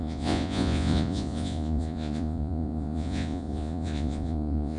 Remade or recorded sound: remade